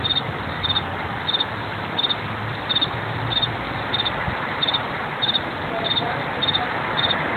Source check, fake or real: fake